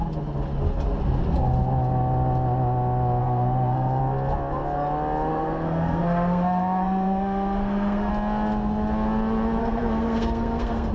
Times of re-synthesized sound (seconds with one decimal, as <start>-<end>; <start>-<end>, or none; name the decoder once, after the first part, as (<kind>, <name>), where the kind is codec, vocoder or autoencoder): 3.2-4.0 (codec, SNAC); 5.3-8.1; 9.6-10.9